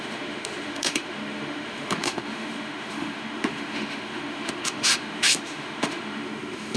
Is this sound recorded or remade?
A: remade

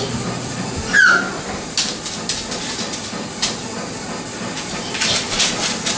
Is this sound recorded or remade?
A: recorded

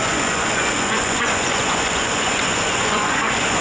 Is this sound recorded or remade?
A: remade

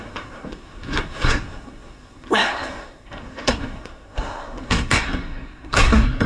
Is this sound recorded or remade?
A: remade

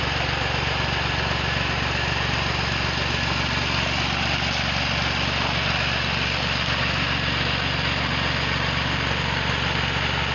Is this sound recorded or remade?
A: recorded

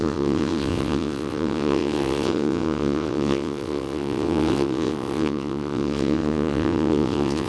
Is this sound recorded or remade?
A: remade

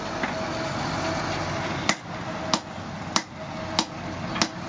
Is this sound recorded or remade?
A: recorded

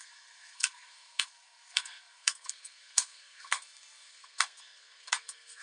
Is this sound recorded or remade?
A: remade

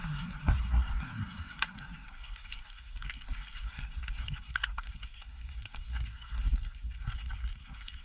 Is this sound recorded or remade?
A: remade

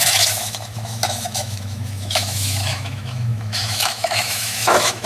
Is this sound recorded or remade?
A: remade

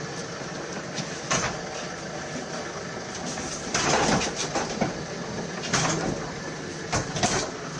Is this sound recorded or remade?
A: recorded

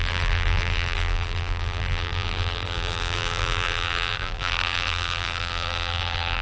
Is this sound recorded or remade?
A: remade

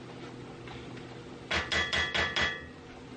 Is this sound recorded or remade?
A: recorded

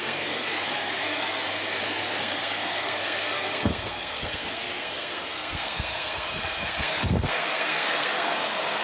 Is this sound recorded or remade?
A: remade